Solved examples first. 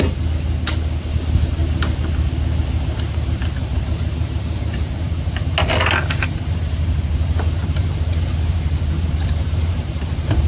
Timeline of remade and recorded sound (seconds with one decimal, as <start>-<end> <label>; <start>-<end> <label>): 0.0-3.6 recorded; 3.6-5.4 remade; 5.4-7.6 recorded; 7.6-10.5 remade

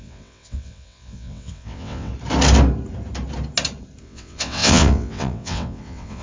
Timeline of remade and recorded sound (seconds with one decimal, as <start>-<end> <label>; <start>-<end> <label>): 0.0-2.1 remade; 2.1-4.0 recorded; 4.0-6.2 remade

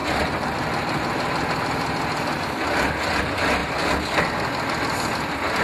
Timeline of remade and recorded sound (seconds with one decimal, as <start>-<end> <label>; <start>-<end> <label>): 0.0-5.6 recorded